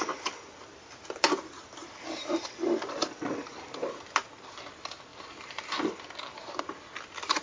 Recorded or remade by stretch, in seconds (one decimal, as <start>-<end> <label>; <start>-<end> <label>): 0.0-7.4 recorded